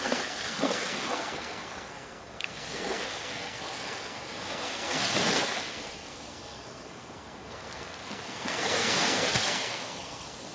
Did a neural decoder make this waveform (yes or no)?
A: yes